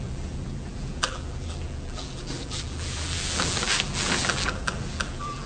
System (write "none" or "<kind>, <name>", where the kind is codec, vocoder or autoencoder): vocoder, BigVGAN v2